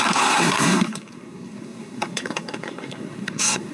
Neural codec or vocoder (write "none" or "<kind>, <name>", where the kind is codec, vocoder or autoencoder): codec, SNAC